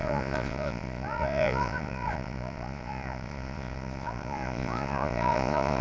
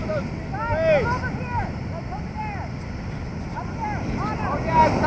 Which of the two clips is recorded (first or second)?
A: second